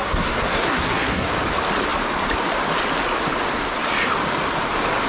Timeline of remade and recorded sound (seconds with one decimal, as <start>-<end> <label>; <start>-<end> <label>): 0.0-1.3 remade; 1.3-5.1 recorded

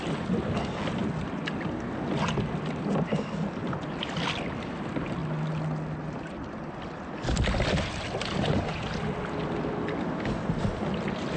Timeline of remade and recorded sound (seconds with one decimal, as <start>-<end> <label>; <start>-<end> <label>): 0.0-11.4 recorded

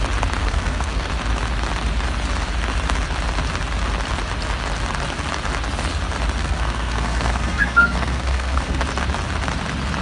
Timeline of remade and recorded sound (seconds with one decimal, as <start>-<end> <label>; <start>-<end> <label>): 0.0-0.4 recorded; 0.4-1.1 remade; 1.1-6.4 recorded; 6.4-8.8 remade; 8.8-10.0 recorded

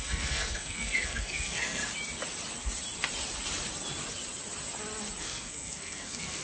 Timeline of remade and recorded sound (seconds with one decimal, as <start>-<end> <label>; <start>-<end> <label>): 0.0-1.8 remade; 1.8-5.2 recorded; 5.2-6.4 remade

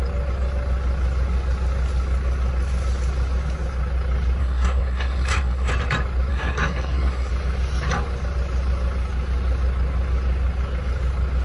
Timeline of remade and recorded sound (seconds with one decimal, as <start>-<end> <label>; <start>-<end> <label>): 0.0-4.4 recorded; 4.4-5.7 remade; 5.7-6.3 recorded; 6.3-7.3 remade; 7.3-11.4 recorded

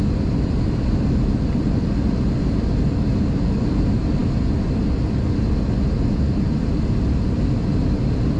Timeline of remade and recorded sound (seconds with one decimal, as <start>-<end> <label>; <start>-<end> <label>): 0.0-8.4 recorded

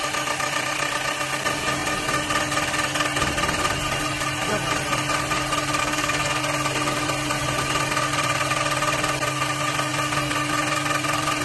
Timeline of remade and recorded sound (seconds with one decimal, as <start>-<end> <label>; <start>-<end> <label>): 0.0-5.8 recorded; 5.8-6.4 remade; 6.4-11.4 recorded

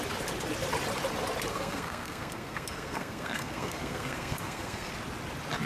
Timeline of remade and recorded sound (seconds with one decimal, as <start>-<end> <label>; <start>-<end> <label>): 0.0-1.5 recorded; 1.5-4.9 remade; 4.9-5.7 recorded